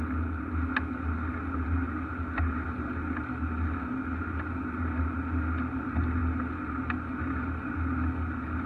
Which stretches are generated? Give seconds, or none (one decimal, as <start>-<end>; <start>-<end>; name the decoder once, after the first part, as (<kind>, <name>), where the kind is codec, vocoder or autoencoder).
none